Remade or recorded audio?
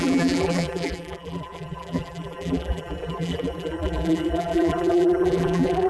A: remade